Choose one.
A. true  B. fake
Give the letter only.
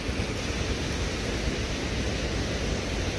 A